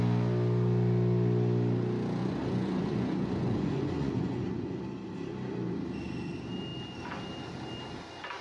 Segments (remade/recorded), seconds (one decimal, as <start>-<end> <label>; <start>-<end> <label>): 0.0-2.2 recorded; 2.2-4.8 remade; 4.8-8.4 recorded